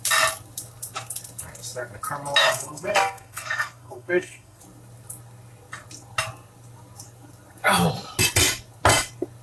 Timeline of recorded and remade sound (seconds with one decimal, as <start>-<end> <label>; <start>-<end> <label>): 0.0-2.4 recorded; 2.4-4.6 remade; 4.6-9.4 recorded